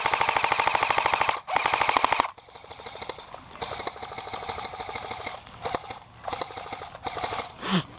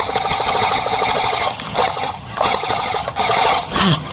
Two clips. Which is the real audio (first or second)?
first